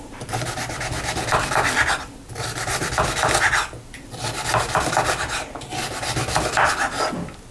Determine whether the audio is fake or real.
real